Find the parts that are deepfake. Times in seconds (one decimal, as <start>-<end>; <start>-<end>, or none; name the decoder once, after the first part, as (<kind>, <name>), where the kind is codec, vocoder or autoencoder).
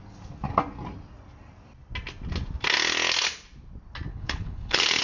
4.1-5.0 (codec, HILCodec)